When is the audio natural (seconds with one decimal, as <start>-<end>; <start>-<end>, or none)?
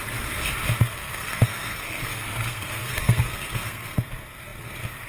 0.0-0.8